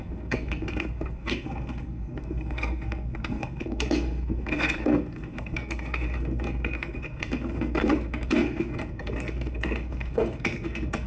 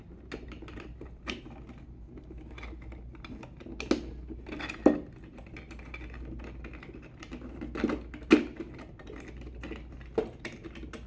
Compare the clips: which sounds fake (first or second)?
first